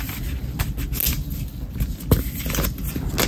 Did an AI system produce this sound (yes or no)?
no